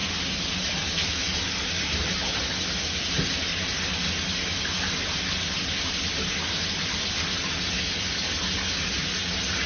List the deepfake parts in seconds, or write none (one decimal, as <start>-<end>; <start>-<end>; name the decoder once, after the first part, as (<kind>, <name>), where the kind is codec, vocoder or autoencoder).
none